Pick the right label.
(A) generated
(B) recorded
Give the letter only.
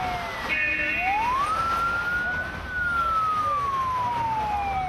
B